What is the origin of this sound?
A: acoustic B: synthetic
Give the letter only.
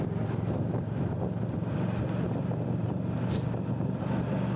A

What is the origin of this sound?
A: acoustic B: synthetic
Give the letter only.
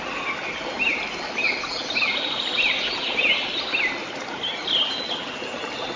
A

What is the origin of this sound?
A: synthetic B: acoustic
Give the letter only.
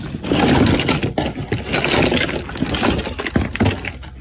B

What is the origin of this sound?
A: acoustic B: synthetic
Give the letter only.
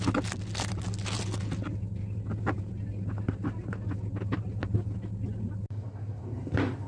A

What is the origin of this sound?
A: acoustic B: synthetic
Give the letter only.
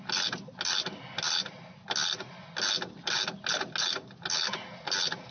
A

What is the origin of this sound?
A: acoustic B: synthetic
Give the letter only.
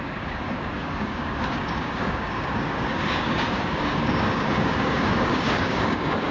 B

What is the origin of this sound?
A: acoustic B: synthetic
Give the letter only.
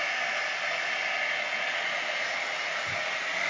A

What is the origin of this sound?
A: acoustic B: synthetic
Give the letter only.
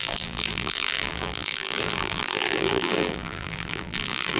B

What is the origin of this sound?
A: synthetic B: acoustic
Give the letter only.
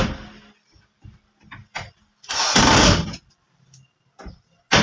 B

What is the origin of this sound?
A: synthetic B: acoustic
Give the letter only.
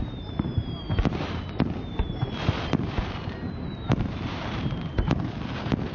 A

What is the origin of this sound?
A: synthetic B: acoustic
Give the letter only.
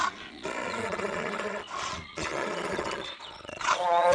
A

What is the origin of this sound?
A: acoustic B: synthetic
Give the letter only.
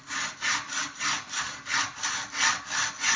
A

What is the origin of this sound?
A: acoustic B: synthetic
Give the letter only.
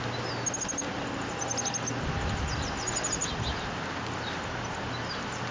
A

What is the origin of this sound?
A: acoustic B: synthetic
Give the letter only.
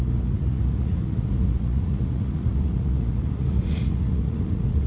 B